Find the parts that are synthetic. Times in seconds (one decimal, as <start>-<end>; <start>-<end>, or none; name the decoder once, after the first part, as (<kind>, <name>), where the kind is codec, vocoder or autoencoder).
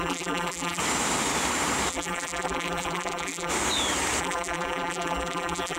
0.0-0.8 (vocoder, BigVGAN v2); 1.9-3.5; 4.2-5.8